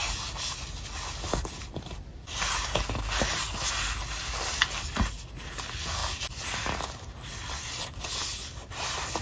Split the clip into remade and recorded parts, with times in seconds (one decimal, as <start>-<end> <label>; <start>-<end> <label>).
0.0-9.2 recorded